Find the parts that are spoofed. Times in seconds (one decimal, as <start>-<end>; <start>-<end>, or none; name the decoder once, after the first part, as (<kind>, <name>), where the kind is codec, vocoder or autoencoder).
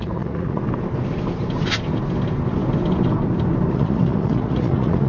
0.0-0.6 (vocoder, Vocos); 3.7-5.1